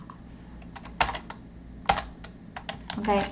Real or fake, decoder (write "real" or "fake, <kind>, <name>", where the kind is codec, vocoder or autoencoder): real